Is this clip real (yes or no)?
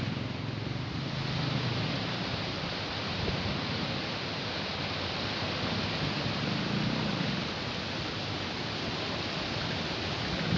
yes